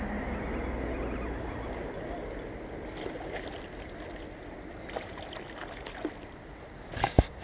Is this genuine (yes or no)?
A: yes